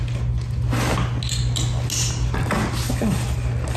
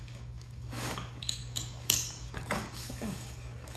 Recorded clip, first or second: first